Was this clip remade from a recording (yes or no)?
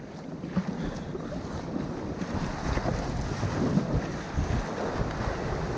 no